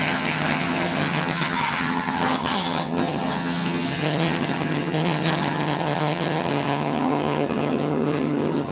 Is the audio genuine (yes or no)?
no